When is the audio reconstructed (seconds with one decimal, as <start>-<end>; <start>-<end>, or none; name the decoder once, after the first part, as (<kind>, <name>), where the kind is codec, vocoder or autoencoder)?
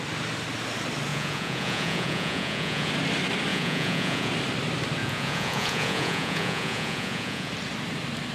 1.1-2.9 (vocoder, Vocos); 3.5-4.3; 5.0-7.5